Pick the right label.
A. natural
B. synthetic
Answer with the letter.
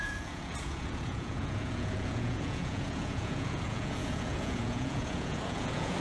B